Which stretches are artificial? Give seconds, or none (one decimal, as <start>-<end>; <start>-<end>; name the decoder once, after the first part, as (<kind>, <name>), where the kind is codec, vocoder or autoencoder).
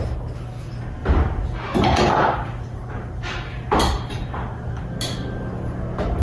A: 1.0-4.7 (vocoder, BigVGAN v2)